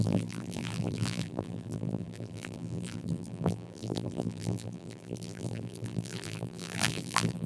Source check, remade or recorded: remade